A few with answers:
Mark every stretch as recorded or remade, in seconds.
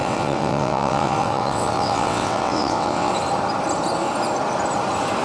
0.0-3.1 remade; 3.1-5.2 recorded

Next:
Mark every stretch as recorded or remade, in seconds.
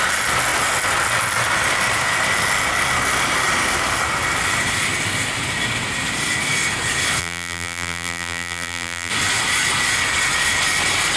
0.0-7.2 recorded; 7.2-9.1 remade; 9.1-11.2 recorded